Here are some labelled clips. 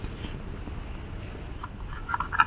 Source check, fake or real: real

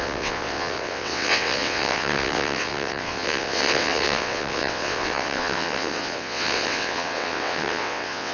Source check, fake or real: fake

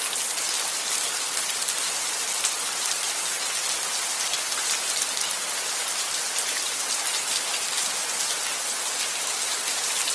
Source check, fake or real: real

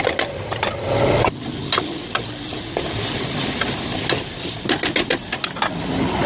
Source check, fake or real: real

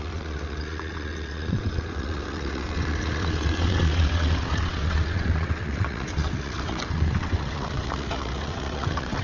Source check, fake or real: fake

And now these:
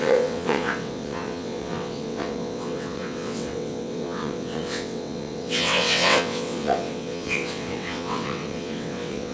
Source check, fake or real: fake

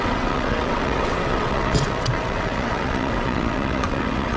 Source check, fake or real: fake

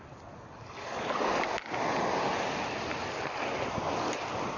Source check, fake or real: real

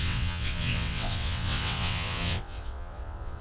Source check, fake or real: fake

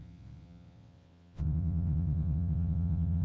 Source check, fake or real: fake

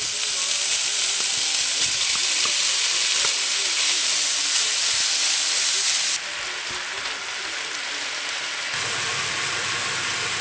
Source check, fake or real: real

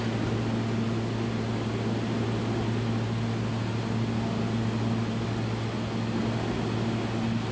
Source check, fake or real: real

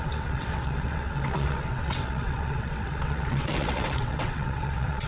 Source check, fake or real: fake